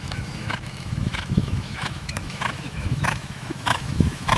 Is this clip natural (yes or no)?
no